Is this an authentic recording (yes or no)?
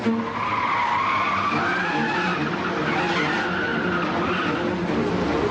yes